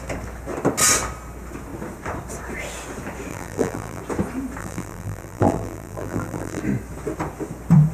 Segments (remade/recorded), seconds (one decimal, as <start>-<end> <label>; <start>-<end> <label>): 0.0-3.3 recorded; 3.3-4.0 remade; 4.0-4.6 recorded; 4.6-6.6 remade; 6.6-7.9 recorded